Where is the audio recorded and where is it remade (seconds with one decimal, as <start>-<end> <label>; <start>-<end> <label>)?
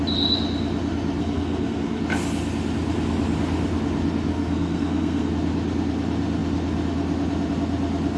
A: 0.0-1.2 recorded; 1.2-2.0 remade; 2.0-4.3 recorded; 4.3-5.3 remade; 5.3-8.2 recorded